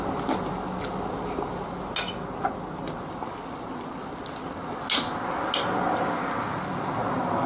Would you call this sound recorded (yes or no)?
yes